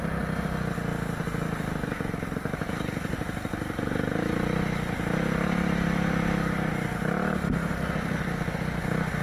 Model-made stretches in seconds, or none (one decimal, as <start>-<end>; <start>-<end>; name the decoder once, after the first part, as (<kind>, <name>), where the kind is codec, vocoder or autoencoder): none